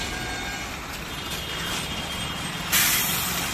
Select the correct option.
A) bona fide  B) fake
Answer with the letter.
B